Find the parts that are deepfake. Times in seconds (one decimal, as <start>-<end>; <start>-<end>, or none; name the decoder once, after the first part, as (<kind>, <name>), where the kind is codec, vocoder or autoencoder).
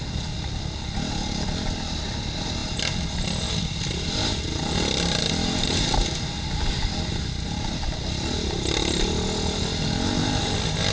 none